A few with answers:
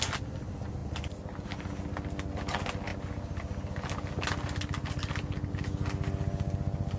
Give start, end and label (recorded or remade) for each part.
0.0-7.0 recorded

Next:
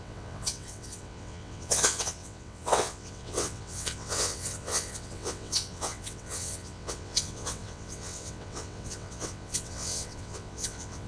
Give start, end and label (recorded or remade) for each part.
0.0-11.1 remade

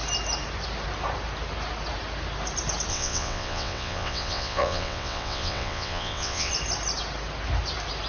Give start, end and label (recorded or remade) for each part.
0.0-2.9 recorded; 2.9-6.5 remade; 6.5-8.1 recorded

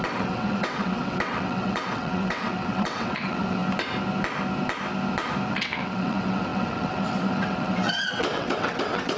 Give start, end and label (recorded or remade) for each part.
0.0-3.6 remade; 3.6-5.5 recorded; 5.5-9.2 remade

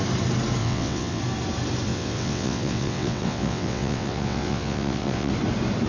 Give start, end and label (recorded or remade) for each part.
0.0-0.6 recorded; 0.6-1.2 remade; 1.2-1.9 recorded; 1.9-5.3 remade; 5.3-5.9 recorded

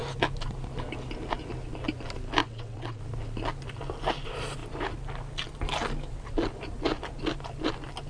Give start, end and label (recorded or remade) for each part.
0.0-2.4 recorded; 2.4-3.0 remade; 3.0-8.1 recorded